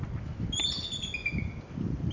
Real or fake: real